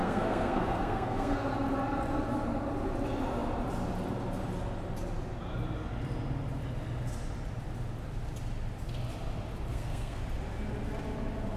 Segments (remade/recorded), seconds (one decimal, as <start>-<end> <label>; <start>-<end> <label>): 0.0-1.5 remade; 1.5-9.7 recorded; 9.7-10.2 remade; 10.2-11.6 recorded